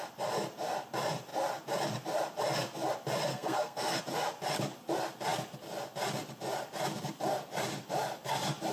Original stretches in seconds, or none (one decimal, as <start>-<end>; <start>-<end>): 0.0-3.3; 4.0-8.7